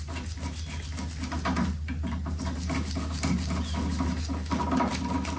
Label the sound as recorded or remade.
recorded